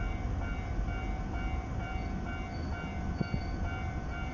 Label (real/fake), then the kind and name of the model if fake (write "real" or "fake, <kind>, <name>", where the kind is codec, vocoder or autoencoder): real